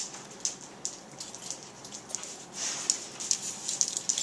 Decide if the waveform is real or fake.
real